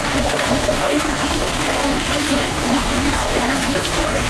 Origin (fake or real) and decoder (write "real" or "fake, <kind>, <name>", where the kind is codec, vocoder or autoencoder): fake, codec, DAC